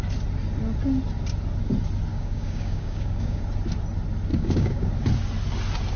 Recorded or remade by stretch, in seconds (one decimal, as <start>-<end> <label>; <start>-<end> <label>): 0.0-2.1 recorded; 2.1-3.4 remade; 3.4-4.3 recorded; 4.3-4.9 remade; 4.9-6.0 recorded